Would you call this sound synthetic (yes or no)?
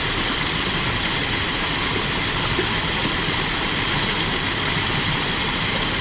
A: yes